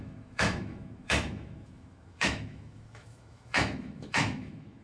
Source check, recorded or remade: remade